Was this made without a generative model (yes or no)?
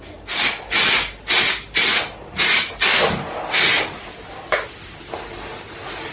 yes